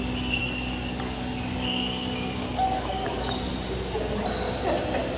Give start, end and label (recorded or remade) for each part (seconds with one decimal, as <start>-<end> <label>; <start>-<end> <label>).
0.0-0.4 recorded; 0.4-3.5 remade; 3.5-5.2 recorded